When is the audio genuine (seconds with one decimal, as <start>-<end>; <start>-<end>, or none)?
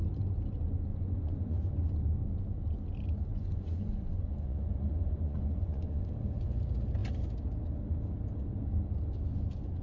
0.0-0.9; 1.6-3.3; 6.1-9.8